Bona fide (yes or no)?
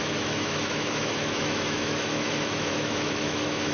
no